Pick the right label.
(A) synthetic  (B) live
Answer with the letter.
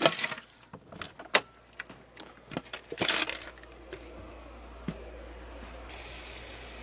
B